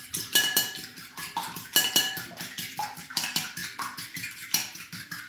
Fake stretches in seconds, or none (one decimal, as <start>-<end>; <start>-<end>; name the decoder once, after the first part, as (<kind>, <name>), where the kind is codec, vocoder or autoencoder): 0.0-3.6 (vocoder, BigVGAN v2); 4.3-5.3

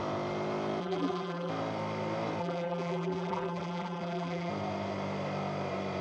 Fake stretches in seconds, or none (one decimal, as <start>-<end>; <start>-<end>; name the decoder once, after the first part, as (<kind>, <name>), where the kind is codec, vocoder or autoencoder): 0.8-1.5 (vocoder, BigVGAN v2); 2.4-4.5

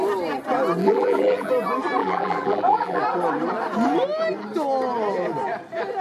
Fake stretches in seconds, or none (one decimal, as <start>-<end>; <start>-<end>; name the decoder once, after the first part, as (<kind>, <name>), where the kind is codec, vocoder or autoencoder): 0.8-1.5 (vocoder, BigVGAN v2); 2.0-3.0

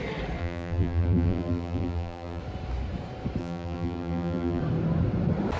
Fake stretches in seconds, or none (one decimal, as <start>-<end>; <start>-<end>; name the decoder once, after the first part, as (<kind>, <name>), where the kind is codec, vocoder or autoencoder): 0.4-2.4 (vocoder, BigVGAN v2); 3.4-4.6